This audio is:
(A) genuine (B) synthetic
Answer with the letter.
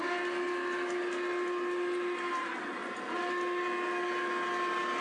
A